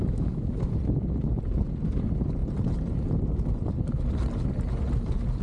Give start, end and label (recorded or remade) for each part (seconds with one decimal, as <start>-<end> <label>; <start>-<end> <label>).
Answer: 0.0-0.7 remade; 0.7-5.4 recorded